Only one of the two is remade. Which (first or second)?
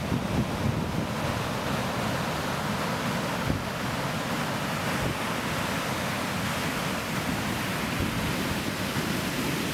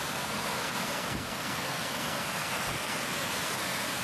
second